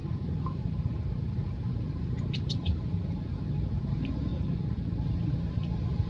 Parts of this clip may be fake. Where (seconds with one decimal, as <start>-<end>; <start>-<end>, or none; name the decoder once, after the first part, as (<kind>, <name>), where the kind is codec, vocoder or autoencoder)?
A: 0.0-4.3 (vocoder, BigVGAN v2); 5.3-6.1